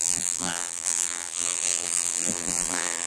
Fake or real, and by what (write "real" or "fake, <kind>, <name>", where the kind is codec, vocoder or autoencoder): fake, vocoder, BigVGAN v2